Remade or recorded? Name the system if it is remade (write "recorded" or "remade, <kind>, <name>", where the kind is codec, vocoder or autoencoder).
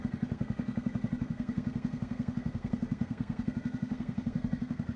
remade, codec, SNAC